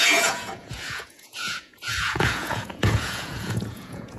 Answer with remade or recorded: remade